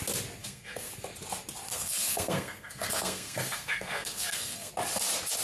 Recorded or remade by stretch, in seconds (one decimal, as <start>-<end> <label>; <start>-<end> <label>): 0.0-0.4 recorded; 0.4-0.9 remade; 0.9-1.7 recorded; 1.7-4.7 remade; 4.7-5.4 recorded